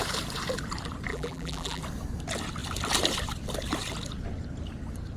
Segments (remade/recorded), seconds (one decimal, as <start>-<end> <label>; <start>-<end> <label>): 0.0-1.1 recorded; 1.1-1.8 remade; 1.8-5.2 recorded